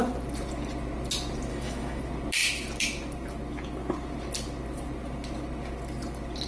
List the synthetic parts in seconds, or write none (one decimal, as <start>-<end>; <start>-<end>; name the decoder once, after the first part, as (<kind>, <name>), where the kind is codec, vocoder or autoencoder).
1.5-2.0 (autoencoder, DAC-VAE)

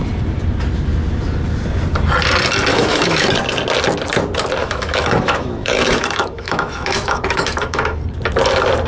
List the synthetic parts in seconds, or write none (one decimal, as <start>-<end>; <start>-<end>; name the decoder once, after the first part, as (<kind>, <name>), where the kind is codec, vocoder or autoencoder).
2.7-3.3 (autoencoder, DAC-VAE); 4.6-8.0

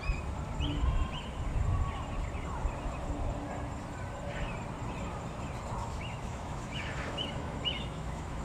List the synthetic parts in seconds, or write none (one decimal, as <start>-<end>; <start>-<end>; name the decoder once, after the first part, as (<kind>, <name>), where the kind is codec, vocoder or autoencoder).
5.8-8.4 (autoencoder, DAC-VAE)

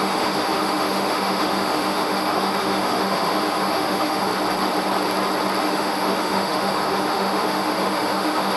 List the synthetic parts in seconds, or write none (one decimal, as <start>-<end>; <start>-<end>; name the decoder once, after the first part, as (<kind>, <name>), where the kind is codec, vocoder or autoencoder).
0.0-4.3 (autoencoder, DAC-VAE); 5.6-8.6